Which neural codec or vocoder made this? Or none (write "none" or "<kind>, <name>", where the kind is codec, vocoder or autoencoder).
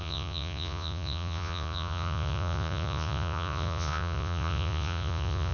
vocoder, Vocos